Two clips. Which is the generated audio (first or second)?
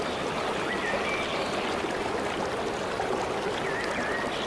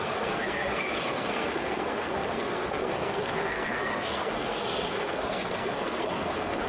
second